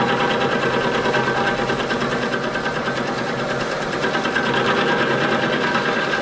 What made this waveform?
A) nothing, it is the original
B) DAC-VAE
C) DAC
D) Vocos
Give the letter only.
A